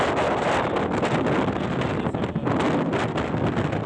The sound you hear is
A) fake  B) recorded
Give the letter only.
B